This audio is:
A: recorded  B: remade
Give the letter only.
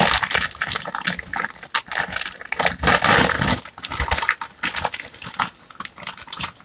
A